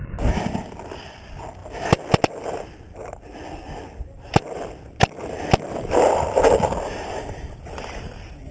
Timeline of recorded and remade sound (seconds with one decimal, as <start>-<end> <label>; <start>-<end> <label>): 0.0-8.5 recorded